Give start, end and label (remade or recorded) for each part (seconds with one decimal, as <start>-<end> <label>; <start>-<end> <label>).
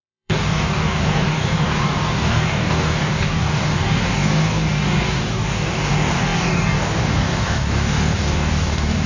0.0-9.1 remade